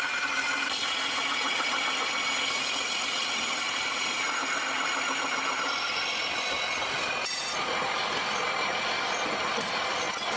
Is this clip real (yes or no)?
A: yes